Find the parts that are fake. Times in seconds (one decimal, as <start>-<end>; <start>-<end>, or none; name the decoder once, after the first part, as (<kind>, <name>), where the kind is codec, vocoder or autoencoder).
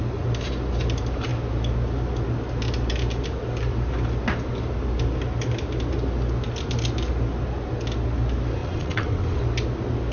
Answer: 8.6-9.4 (vocoder, WaveNeXt)